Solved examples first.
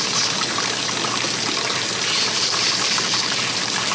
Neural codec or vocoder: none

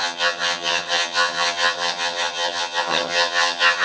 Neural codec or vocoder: vocoder, HiFi-GAN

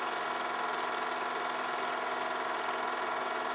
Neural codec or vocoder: none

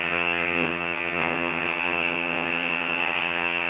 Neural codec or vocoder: vocoder, HiFi-GAN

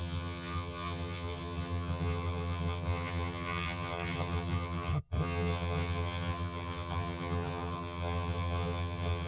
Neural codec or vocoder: vocoder, HiFi-GAN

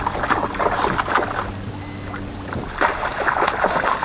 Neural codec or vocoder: none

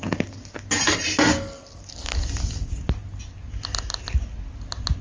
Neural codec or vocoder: none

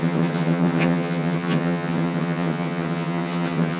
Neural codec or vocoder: vocoder, HiFi-GAN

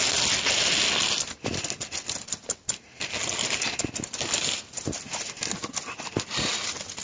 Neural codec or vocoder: none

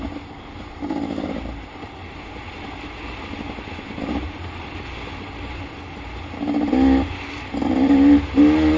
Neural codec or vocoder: none